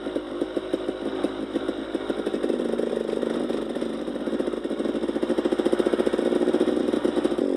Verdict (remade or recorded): recorded